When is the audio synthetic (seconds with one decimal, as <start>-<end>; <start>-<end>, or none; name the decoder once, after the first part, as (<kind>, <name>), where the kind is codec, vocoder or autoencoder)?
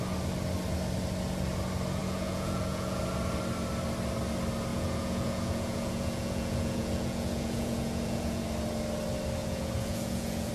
2.0-3.0 (vocoder, Vocos); 4.7-8.4; 9.4-10.5